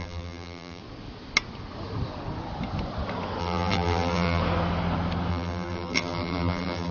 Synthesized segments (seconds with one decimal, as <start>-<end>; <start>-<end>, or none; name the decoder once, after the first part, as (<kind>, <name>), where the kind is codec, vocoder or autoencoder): 0.0-0.8 (vocoder, BigVGAN v2); 3.4-4.4; 5.3-6.9